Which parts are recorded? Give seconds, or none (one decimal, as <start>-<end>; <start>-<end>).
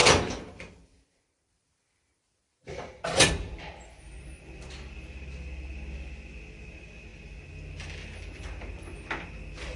3.7-9.8